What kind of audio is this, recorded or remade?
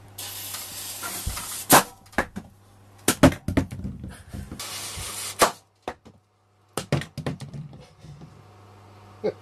recorded